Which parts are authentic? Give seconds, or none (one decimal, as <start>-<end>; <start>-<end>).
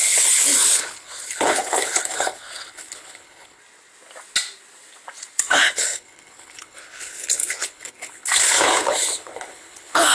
3.6-5.4